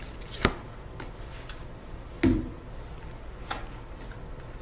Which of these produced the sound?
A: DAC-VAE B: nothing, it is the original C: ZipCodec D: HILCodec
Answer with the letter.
B